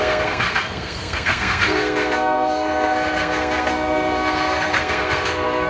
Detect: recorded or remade remade